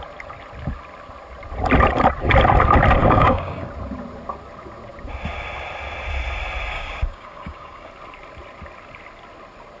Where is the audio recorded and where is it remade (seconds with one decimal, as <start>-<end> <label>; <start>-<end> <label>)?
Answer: 0.0-3.0 recorded; 3.0-3.7 remade; 3.7-6.7 recorded; 6.7-7.9 remade; 7.9-9.8 recorded